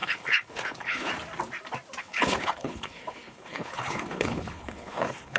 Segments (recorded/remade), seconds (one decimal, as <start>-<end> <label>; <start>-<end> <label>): 0.0-1.1 remade; 1.1-2.0 recorded; 2.0-5.4 remade